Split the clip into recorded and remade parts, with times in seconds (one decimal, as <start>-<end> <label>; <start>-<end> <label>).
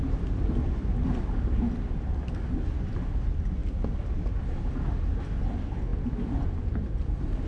0.0-7.5 recorded